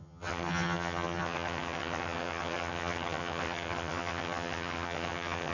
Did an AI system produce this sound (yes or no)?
yes